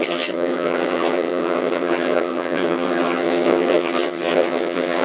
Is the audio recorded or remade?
remade